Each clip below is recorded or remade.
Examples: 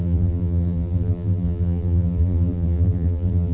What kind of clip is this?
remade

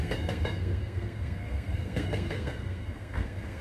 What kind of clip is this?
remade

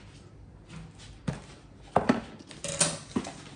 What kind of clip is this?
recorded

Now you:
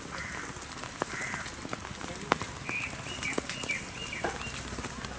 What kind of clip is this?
recorded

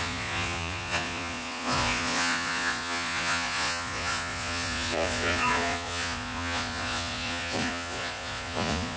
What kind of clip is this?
remade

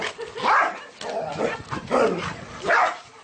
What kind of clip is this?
recorded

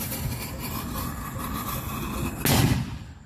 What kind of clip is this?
recorded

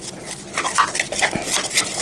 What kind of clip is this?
recorded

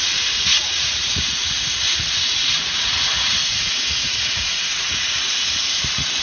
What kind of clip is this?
remade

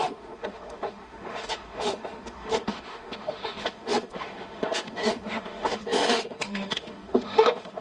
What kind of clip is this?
remade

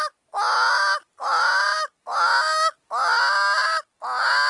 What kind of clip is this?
recorded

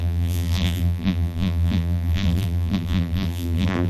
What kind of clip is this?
remade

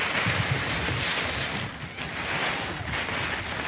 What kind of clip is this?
recorded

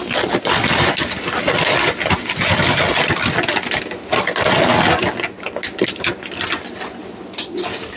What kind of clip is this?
recorded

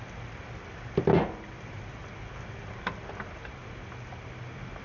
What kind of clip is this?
recorded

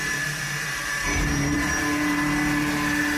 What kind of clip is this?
remade